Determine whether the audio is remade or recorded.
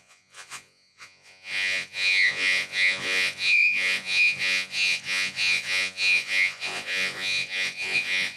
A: remade